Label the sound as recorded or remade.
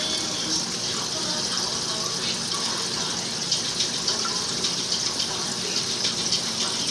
recorded